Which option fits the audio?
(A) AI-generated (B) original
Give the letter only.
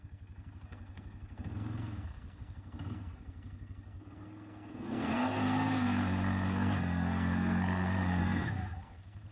A